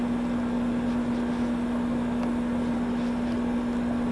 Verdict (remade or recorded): recorded